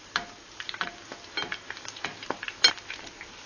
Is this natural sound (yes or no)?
no